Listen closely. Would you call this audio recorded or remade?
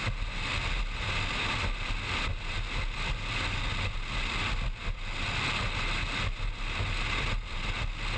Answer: recorded